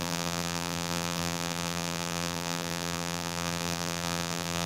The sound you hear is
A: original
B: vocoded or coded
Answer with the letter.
B